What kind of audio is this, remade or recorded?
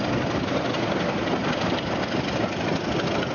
recorded